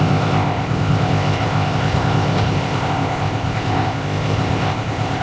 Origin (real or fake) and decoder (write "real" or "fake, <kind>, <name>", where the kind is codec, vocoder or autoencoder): fake, codec, ZipCodec